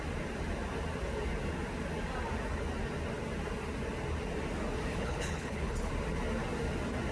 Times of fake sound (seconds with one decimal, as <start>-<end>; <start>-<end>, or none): 4.9-5.9